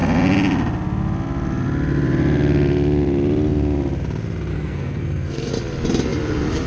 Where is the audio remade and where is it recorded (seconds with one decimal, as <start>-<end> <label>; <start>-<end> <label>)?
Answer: 0.0-4.5 recorded; 4.5-5.5 remade; 5.5-6.7 recorded